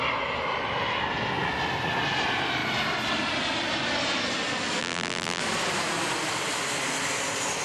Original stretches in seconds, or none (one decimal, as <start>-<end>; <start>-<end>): 0.0-4.8; 5.4-7.6